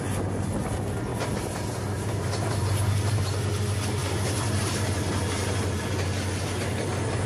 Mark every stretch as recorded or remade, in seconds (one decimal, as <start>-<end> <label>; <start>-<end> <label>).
0.0-1.1 recorded; 1.1-3.2 remade; 3.2-4.0 recorded; 4.0-5.9 remade; 5.9-7.3 recorded